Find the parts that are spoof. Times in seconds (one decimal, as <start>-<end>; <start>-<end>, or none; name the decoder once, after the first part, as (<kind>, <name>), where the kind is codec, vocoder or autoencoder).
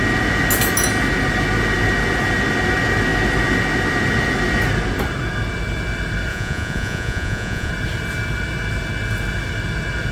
6.3-7.7 (vocoder, Vocos)